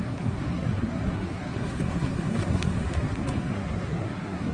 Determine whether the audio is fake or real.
fake